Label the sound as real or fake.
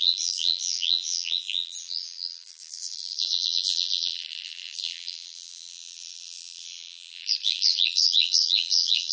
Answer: fake